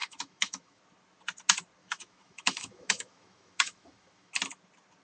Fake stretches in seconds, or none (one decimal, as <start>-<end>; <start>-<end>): 0.0-0.8; 1.8-4.3